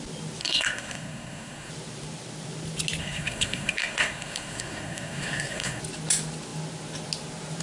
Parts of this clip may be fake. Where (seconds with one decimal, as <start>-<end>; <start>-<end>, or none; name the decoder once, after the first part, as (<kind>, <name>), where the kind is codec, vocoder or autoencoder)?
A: 0.4-1.7 (codec, SNAC); 3.0-5.8